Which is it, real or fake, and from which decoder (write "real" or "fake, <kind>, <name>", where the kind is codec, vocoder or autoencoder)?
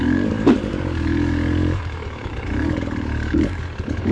fake, codec, DAC